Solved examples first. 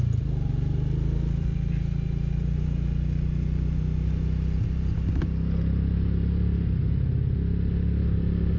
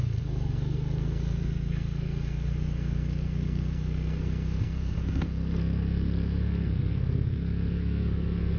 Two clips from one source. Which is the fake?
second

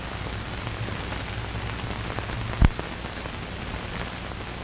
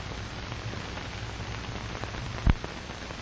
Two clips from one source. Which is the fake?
second